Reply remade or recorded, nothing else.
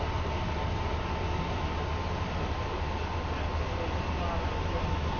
recorded